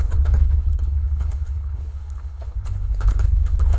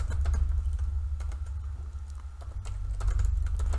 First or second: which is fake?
first